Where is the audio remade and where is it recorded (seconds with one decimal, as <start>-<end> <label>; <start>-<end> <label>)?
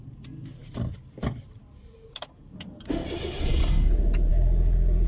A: 0.0-5.1 recorded